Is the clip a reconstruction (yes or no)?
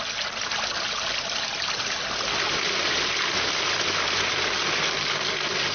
no